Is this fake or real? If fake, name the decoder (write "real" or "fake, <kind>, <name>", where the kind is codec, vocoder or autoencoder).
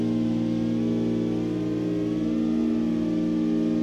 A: real